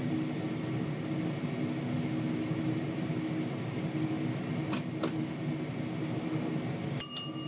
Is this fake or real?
real